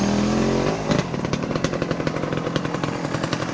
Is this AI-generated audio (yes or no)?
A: no